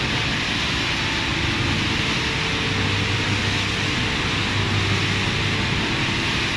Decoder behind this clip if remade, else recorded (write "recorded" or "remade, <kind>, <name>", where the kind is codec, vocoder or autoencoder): recorded